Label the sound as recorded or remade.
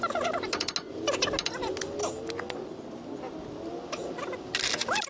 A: recorded